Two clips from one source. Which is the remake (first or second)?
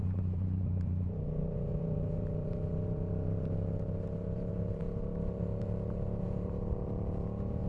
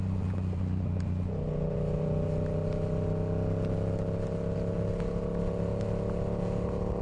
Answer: first